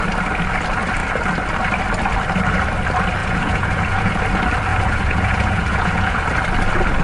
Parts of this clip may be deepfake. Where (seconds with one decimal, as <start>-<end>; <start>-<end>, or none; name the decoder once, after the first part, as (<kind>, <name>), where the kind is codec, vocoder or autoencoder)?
3.2-4.2 (vocoder, Vocos); 4.7-6.2